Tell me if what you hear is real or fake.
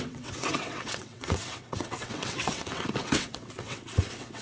fake